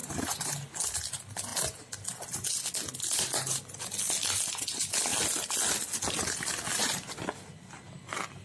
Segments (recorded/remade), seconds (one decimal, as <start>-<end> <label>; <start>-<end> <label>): 0.0-0.5 remade; 0.5-8.4 recorded